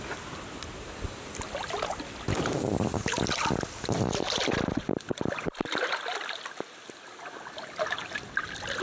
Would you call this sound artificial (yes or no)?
no